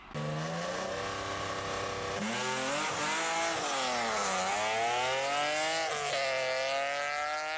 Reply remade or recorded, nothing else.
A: recorded